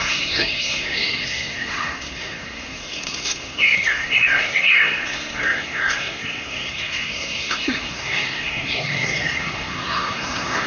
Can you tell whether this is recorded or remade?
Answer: remade